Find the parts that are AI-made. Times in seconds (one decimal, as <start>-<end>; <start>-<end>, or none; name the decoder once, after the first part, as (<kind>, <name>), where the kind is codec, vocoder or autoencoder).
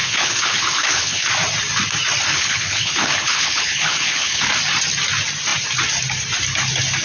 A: 0.0-1.3 (codec, HILCodec); 2.3-4.5